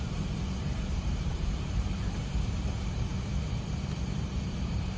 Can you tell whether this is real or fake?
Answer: fake